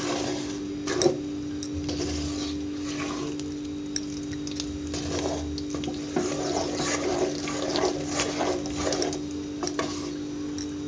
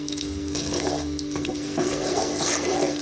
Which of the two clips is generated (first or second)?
second